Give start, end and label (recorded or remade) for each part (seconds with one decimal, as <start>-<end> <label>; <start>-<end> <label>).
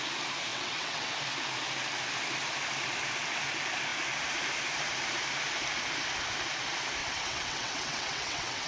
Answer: 0.0-0.5 recorded; 0.5-1.1 remade; 1.1-7.0 recorded; 7.0-8.7 remade